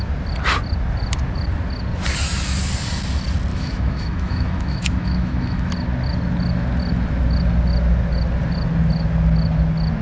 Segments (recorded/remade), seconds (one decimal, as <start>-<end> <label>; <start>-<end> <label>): 0.0-3.5 recorded; 3.5-5.7 remade; 5.7-10.0 recorded